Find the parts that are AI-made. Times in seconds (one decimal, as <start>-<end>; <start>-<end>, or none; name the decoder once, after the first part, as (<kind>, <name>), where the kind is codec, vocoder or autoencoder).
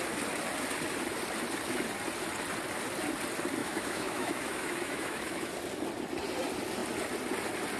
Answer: 3.6-5.5 (autoencoder, DAC-VAE)